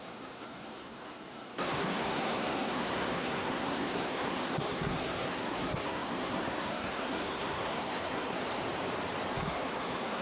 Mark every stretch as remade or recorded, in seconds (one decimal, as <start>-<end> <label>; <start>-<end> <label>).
0.0-8.4 remade; 8.4-9.3 recorded; 9.3-10.2 remade